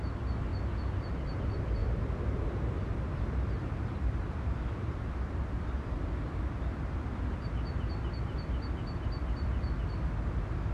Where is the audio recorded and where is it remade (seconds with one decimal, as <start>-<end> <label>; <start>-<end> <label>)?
0.0-1.8 recorded; 1.8-5.0 remade; 5.0-10.7 recorded